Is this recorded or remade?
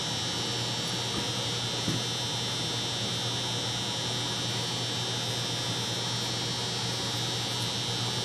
recorded